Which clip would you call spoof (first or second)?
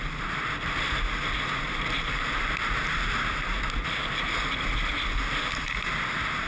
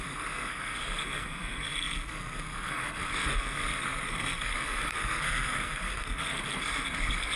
second